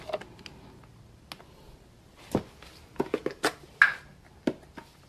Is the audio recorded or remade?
recorded